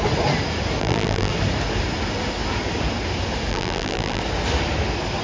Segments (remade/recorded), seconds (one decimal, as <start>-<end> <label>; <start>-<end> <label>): 0.0-0.8 recorded; 0.8-1.3 remade; 1.3-3.5 recorded; 3.5-4.2 remade; 4.2-5.2 recorded